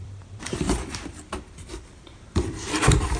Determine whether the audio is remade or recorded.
remade